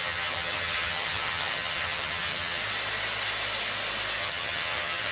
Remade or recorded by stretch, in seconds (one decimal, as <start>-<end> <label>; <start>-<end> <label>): 0.0-2.6 remade; 2.6-4.2 recorded; 4.2-5.1 remade